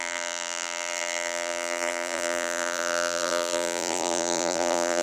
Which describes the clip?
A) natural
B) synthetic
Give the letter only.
B